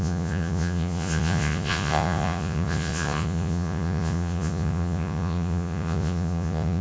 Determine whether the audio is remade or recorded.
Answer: remade